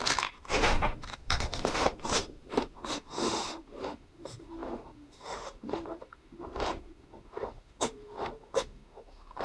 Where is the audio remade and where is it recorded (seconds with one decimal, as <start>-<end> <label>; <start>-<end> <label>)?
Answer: 0.0-9.4 remade